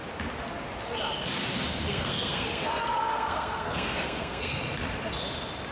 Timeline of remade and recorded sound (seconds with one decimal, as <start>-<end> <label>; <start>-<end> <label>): 0.0-1.9 recorded; 1.9-4.6 remade; 4.6-5.7 recorded